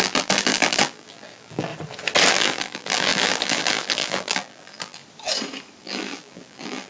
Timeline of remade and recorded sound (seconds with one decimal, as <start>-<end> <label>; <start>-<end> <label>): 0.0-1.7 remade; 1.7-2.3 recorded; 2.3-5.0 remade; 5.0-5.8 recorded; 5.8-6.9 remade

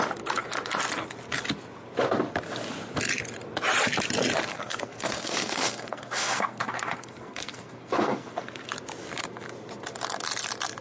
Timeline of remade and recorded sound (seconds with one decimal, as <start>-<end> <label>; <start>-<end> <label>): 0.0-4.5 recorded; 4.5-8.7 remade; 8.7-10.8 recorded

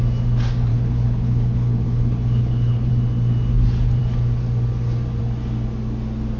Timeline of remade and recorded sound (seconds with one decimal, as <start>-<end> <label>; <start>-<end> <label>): 0.0-0.7 recorded; 0.7-2.9 remade; 2.9-6.4 recorded

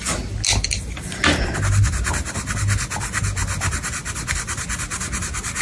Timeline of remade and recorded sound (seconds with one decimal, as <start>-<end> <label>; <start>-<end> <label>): 0.0-5.6 recorded

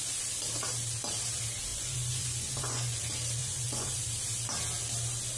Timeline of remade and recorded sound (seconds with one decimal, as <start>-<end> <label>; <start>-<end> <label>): 0.0-1.7 recorded; 1.7-3.0 remade; 3.0-3.4 recorded; 3.4-4.0 remade; 4.0-5.4 recorded

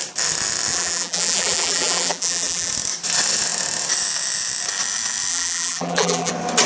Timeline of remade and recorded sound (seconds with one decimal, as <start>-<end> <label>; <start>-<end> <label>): 0.0-0.7 recorded; 0.7-2.7 remade; 2.7-5.3 recorded; 5.3-6.3 remade; 6.3-6.7 recorded

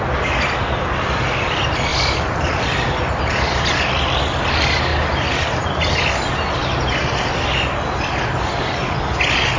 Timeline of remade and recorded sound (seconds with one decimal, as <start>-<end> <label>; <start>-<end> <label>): 0.0-1.9 recorded; 1.9-4.2 remade; 4.2-4.9 recorded; 4.9-5.7 remade; 5.7-9.6 recorded

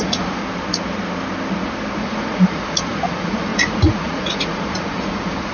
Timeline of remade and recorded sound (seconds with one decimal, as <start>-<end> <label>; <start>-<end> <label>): 0.0-0.4 remade; 0.4-2.0 recorded; 2.0-5.5 remade